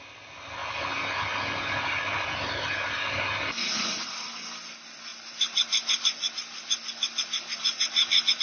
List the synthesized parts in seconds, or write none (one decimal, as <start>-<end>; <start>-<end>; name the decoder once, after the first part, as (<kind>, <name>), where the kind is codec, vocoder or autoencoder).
3.6-4.3 (vocoder, Vocos)